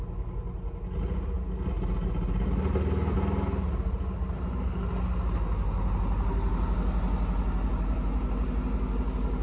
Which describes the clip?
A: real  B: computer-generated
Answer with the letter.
A